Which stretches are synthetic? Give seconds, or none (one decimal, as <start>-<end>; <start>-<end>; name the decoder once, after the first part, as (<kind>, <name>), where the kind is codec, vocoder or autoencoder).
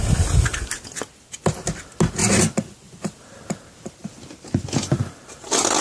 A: none